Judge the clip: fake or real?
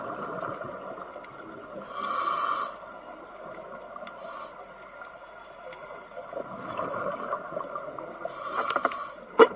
real